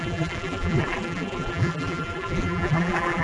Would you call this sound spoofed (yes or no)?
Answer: yes